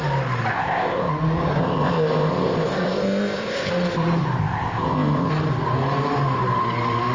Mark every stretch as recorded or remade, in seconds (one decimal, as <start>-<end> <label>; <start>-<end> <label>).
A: 0.0-0.5 recorded; 0.5-1.1 remade; 1.1-1.6 recorded; 1.6-3.7 remade; 3.7-4.4 recorded; 4.4-5.3 remade; 5.3-7.1 recorded